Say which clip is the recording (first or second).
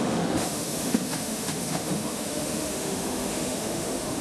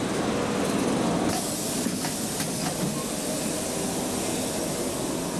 second